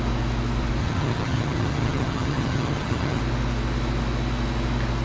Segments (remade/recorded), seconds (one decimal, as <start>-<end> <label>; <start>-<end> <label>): 0.0-0.8 recorded; 0.8-3.2 remade; 3.2-5.0 recorded

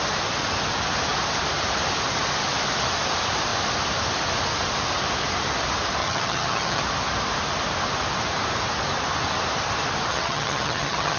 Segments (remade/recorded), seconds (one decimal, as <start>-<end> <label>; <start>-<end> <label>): 0.0-6.0 recorded; 6.0-6.8 remade; 6.8-10.1 recorded; 10.1-11.2 remade